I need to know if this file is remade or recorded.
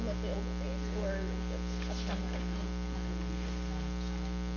recorded